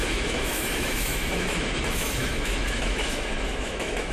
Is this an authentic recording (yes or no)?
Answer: no